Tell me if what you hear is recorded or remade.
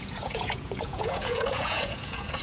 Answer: remade